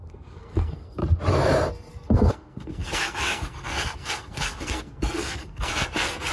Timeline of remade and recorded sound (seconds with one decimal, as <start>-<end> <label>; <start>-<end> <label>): 0.0-1.0 remade; 1.0-1.9 recorded; 1.9-6.3 remade